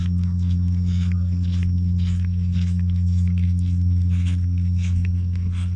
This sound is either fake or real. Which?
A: fake